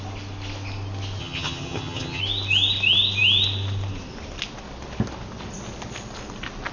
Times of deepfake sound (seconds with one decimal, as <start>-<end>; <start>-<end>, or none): 1.2-2.2